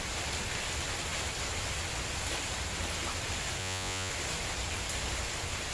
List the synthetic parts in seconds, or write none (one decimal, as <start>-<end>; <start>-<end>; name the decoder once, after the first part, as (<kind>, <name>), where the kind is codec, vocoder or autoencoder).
3.6-4.1 (vocoder, Vocos)